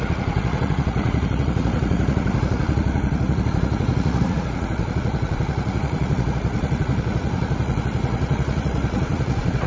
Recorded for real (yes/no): no